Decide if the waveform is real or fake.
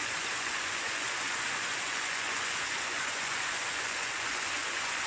fake